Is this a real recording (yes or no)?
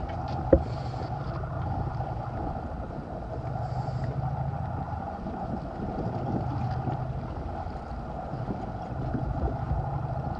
yes